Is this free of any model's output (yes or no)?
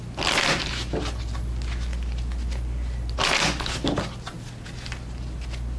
yes